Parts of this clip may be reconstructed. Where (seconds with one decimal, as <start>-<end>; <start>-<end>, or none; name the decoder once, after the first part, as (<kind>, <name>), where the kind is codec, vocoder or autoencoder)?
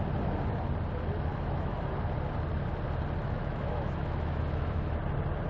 1.3-2.0 (autoencoder, DAC-VAE); 3.2-5.0